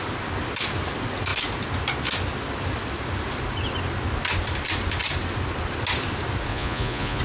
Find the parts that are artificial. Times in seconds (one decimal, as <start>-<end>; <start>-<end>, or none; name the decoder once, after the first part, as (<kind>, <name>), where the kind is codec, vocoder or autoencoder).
6.5-7.2 (vocoder, Vocos)